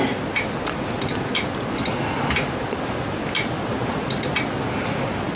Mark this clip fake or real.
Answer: real